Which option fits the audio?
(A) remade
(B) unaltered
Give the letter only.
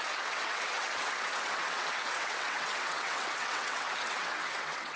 A